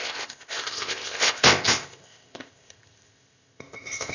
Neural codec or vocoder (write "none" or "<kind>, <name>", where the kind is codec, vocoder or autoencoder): codec, ZipCodec